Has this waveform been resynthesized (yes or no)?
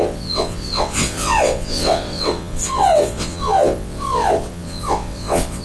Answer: yes